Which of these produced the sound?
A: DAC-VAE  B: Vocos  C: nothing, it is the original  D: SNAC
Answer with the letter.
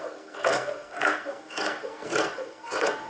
D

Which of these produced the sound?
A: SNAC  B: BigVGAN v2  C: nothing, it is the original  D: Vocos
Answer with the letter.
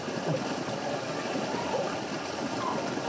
C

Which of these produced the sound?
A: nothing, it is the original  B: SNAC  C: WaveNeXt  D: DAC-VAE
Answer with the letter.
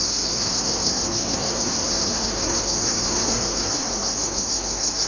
B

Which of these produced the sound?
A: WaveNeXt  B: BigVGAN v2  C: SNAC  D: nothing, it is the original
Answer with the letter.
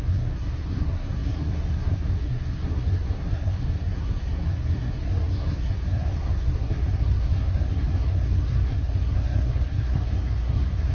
C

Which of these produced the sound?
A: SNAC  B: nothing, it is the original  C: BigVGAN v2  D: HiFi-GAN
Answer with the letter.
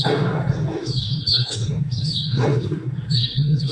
A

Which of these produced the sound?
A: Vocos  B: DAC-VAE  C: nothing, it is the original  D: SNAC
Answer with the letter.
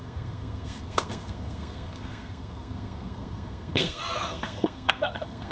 D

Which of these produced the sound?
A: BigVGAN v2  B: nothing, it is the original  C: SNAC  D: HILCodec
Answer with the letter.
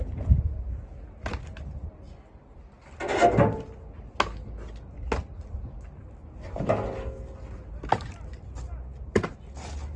B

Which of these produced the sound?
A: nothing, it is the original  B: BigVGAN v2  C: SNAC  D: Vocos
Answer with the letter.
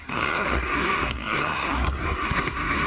C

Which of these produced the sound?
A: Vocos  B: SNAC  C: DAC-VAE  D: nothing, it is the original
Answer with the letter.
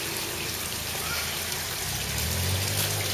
D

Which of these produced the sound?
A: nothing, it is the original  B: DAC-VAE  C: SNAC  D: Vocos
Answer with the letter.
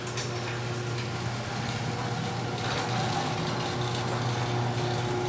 A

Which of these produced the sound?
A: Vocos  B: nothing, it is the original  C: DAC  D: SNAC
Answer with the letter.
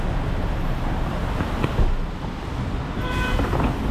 B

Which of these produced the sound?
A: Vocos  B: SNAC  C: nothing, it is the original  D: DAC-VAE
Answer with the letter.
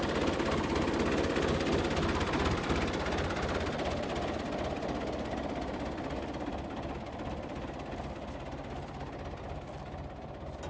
C